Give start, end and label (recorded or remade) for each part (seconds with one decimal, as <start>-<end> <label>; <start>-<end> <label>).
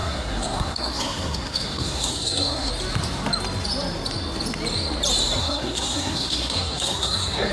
0.0-2.7 remade; 2.7-5.4 recorded; 5.4-7.5 remade